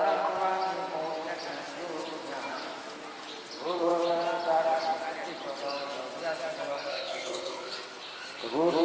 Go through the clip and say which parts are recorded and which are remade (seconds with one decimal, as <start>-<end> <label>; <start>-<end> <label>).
0.0-6.9 recorded; 6.9-7.7 remade; 7.7-8.8 recorded